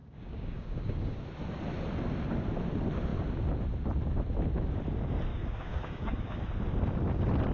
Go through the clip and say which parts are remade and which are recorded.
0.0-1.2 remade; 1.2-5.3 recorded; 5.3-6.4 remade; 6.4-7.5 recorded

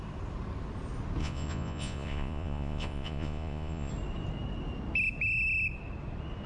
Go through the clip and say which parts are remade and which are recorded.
0.0-1.2 recorded; 1.2-3.9 remade; 3.9-6.5 recorded

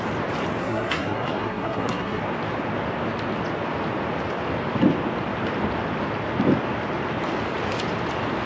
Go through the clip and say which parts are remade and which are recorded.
0.0-0.6 recorded; 0.6-2.2 remade; 2.2-8.5 recorded

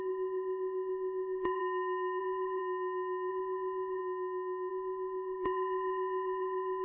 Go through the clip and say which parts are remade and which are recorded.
0.0-1.6 remade; 1.6-2.2 recorded; 2.2-2.6 remade; 2.6-3.3 recorded; 3.3-4.0 remade; 4.0-4.7 recorded; 4.7-6.8 remade

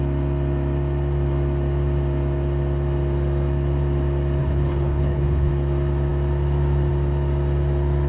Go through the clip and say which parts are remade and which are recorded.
0.0-4.4 recorded; 4.4-5.5 remade; 5.5-8.1 recorded

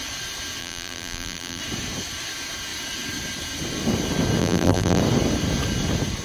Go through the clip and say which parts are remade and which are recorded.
0.0-0.6 recorded; 0.6-1.6 remade; 1.6-4.4 recorded; 4.4-5.0 remade; 5.0-6.2 recorded